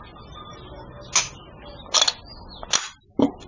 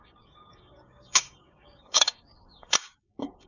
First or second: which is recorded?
first